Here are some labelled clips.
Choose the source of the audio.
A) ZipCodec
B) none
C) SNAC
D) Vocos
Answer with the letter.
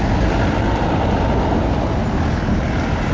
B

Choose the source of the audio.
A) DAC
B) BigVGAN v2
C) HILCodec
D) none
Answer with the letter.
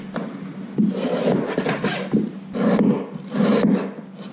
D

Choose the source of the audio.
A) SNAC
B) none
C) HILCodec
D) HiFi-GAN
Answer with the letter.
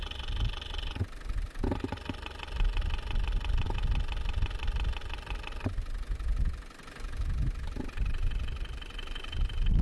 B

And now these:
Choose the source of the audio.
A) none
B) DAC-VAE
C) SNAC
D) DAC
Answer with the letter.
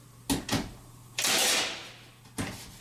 A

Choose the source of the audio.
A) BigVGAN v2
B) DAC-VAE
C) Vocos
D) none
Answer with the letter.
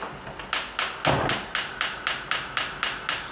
D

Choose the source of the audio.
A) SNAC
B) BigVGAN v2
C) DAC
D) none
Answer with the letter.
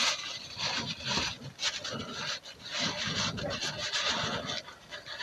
D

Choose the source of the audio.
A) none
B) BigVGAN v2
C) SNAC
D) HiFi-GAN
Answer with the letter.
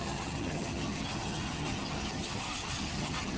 D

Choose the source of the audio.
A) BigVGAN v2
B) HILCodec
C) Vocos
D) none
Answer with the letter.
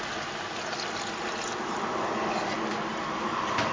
D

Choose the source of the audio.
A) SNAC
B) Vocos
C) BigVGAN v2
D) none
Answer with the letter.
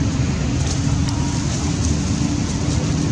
D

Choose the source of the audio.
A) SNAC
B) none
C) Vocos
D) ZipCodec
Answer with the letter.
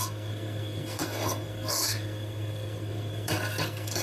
A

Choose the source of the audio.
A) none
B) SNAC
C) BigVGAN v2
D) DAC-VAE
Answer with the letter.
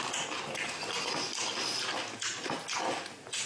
A